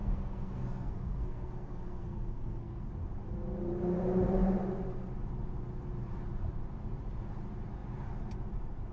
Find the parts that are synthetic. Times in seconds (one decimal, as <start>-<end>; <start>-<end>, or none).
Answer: 0.0-2.9